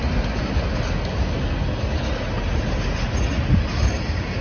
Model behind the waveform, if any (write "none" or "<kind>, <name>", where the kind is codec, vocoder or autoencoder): none